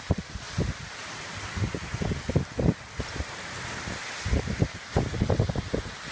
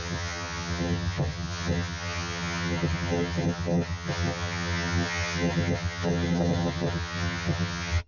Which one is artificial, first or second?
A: second